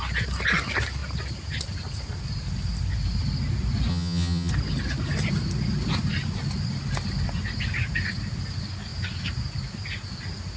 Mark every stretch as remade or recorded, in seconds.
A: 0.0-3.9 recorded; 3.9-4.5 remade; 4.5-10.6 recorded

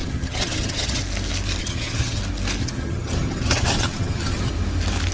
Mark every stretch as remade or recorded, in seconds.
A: 0.0-1.0 remade; 1.0-1.6 recorded; 1.6-2.2 remade; 2.2-2.6 recorded; 2.6-4.5 remade; 4.5-5.1 recorded

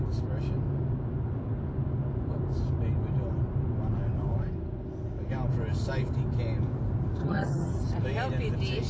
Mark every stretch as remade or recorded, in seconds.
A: 0.0-7.2 recorded; 7.2-7.7 remade; 7.7-8.9 recorded

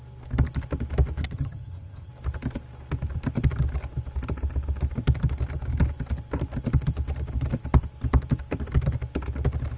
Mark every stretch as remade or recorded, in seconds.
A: 0.0-1.2 recorded; 1.2-2.1 remade; 2.1-9.8 recorded

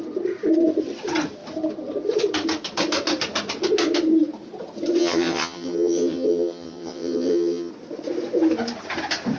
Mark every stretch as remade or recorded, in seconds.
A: 0.0-5.0 recorded; 5.0-7.7 remade; 7.7-9.4 recorded